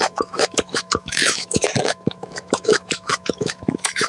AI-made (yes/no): yes